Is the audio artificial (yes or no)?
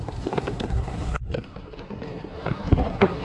yes